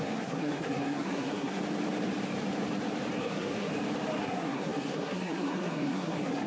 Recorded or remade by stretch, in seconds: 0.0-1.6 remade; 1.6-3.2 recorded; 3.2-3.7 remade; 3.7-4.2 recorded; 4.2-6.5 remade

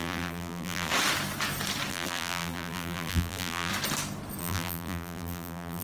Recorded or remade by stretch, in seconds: 0.0-0.9 remade; 0.9-1.9 recorded; 1.9-3.7 remade; 3.7-4.4 recorded; 4.4-5.8 remade

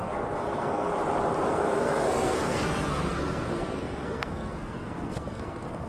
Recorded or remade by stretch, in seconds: 0.0-0.9 remade; 0.9-1.5 recorded; 1.5-5.9 remade

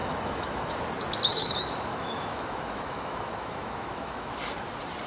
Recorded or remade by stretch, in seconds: 0.0-0.8 remade; 0.8-1.3 recorded; 1.3-4.4 remade; 4.4-5.1 recorded

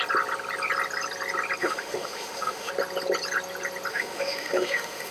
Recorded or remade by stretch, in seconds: 0.0-1.6 recorded; 1.6-2.7 remade; 2.7-3.9 recorded; 3.9-5.1 remade

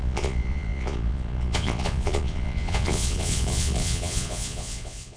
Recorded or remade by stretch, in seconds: 0.0-5.2 remade

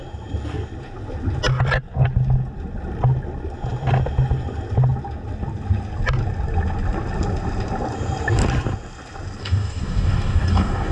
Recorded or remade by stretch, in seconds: 0.0-9.4 recorded; 9.4-10.9 remade